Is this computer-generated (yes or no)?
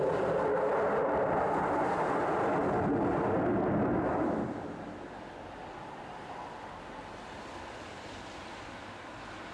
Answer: no